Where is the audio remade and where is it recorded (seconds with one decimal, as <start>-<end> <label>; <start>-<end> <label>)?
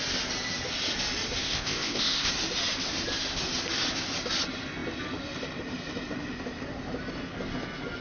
0.0-1.4 recorded; 1.4-2.3 remade; 2.3-8.0 recorded